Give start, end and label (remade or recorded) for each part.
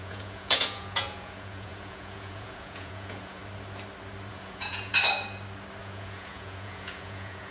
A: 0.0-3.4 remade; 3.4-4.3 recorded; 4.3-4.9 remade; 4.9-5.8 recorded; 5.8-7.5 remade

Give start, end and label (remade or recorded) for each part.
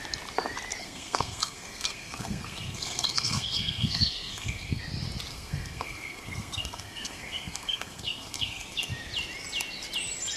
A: 0.0-0.8 recorded; 0.8-4.8 remade; 4.8-5.3 recorded; 5.3-8.9 remade; 8.9-10.4 recorded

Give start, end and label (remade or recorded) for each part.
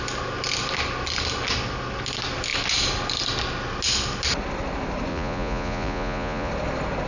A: 0.0-5.1 recorded; 5.1-6.5 remade; 6.5-7.1 recorded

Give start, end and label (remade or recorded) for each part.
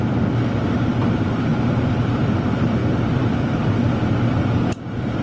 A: 0.0-1.5 remade; 1.5-2.1 recorded; 2.1-5.2 remade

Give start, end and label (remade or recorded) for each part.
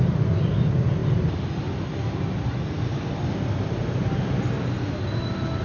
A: 0.0-3.8 recorded; 3.8-5.0 remade; 5.0-5.6 recorded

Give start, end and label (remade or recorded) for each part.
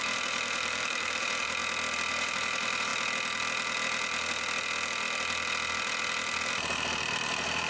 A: 0.0-1.6 remade; 1.6-2.1 recorded; 2.1-2.9 remade; 2.9-6.5 recorded; 6.5-7.7 remade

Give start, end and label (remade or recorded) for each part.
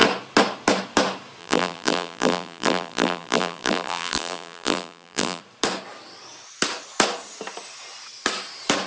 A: 0.0-1.4 recorded; 1.4-5.4 remade; 5.4-8.9 recorded